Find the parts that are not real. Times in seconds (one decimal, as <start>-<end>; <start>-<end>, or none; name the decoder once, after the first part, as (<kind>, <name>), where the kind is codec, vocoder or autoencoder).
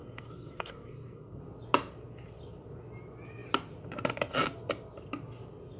0.0-1.4 (codec, SNAC)